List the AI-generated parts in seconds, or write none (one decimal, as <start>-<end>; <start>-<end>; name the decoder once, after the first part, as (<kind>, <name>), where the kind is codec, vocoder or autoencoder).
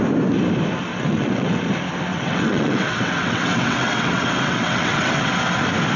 0.9-1.6 (vocoder, WaveNeXt); 2.1-5.3